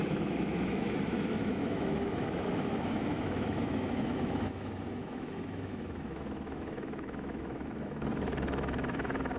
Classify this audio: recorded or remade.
remade